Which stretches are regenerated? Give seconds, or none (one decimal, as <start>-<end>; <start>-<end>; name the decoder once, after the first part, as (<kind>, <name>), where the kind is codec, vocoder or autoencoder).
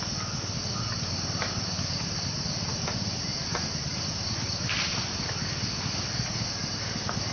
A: none